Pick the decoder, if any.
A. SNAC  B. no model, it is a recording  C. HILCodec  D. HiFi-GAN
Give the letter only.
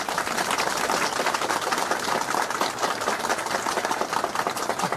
B